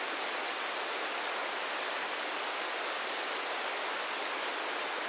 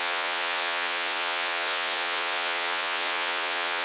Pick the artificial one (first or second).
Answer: second